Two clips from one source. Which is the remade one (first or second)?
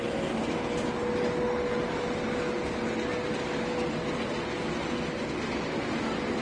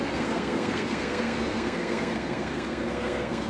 second